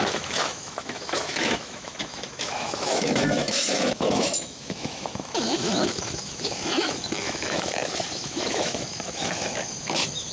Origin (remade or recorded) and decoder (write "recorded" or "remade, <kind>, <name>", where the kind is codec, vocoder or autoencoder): remade, autoencoder, DAC-VAE